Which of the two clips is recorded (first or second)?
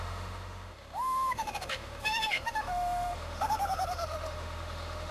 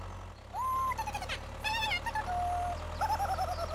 second